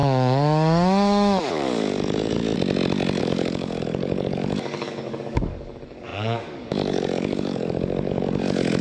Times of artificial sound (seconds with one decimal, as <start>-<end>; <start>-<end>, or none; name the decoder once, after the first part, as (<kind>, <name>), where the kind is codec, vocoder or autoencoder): 0.0-2.4 (codec, DAC); 3.2-8.8